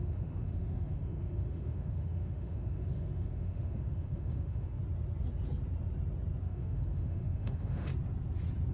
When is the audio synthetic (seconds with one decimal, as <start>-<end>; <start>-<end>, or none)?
0.0-4.8; 6.4-7.9